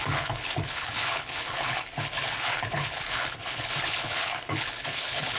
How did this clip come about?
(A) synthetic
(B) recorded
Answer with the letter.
A